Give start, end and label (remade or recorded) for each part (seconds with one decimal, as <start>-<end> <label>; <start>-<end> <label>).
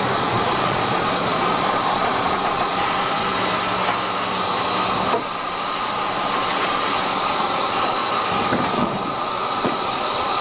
0.0-3.3 remade; 3.3-5.1 recorded; 5.1-8.0 remade; 8.0-8.7 recorded; 8.7-10.4 remade